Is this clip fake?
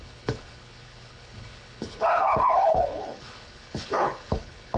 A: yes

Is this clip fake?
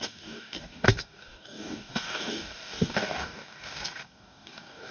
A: yes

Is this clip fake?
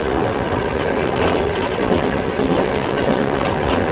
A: yes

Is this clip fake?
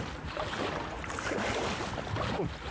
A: no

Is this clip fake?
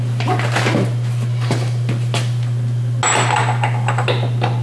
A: no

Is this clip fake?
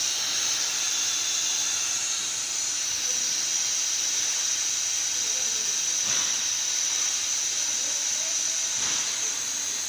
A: no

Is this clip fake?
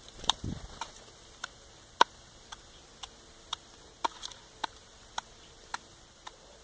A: yes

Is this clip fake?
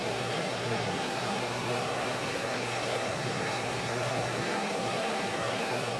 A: yes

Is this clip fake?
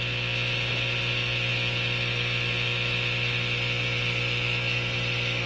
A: no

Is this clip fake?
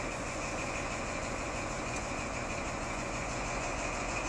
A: yes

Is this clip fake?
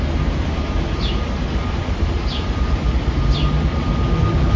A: no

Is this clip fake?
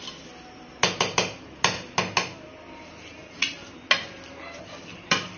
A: no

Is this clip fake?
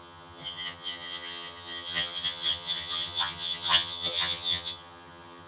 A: yes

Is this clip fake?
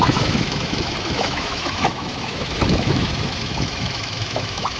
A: yes